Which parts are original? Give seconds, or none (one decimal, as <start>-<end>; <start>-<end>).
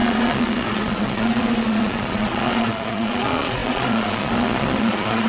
none